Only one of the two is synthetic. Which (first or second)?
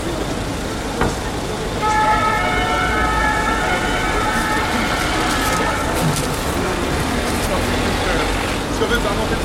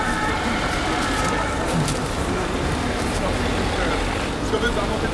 second